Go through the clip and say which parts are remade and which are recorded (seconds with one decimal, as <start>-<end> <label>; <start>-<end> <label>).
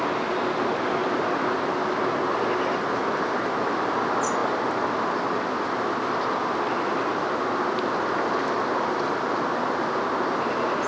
0.0-10.9 recorded